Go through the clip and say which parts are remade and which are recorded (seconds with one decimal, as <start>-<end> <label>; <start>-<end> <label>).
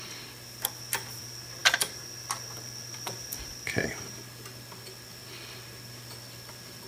0.0-6.9 recorded